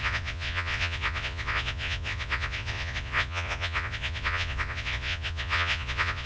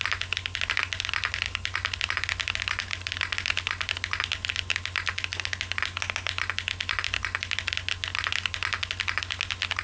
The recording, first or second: second